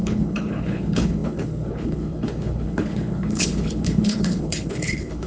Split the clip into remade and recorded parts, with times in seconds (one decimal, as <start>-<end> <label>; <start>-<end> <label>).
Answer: 0.0-5.3 remade